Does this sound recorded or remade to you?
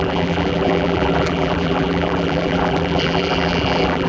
remade